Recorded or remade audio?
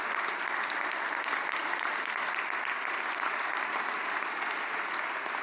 recorded